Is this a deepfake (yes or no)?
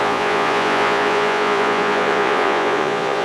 yes